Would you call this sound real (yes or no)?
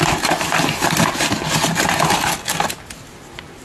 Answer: yes